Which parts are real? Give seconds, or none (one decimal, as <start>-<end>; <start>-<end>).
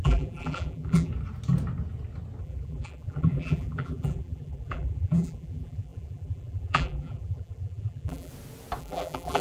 1.1-2.4; 8.3-8.8